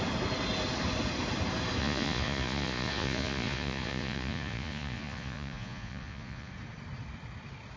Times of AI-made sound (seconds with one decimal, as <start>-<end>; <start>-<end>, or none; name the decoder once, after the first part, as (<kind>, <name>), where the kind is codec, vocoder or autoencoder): 1.8-6.5 (vocoder, Vocos)